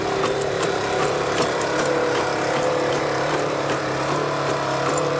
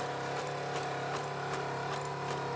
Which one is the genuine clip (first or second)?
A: second